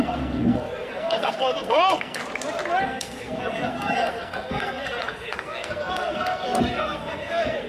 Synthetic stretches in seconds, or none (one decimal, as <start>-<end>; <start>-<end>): 0.0-2.2; 2.8-7.7